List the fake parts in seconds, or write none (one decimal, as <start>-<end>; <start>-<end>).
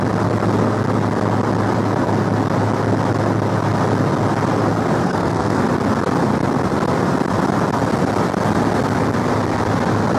5.0-5.6